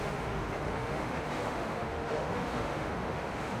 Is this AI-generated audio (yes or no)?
yes